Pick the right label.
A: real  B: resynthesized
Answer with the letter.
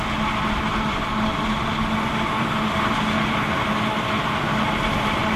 A